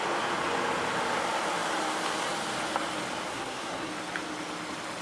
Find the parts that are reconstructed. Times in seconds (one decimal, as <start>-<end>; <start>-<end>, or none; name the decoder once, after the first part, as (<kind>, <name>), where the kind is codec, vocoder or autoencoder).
3.3-3.9 (codec, SNAC)